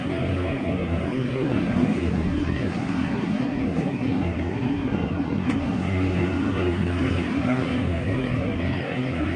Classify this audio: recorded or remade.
remade